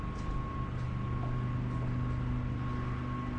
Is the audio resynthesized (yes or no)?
no